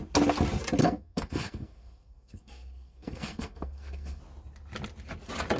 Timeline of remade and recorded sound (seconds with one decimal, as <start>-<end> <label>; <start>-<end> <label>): 0.0-0.8 recorded; 0.8-4.2 remade; 4.2-5.6 recorded